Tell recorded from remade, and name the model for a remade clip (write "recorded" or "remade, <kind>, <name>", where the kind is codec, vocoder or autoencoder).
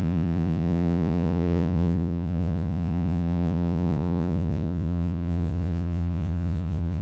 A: remade, vocoder, Vocos